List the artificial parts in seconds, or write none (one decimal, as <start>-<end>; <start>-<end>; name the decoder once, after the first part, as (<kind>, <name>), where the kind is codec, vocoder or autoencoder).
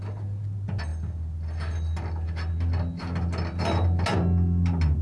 none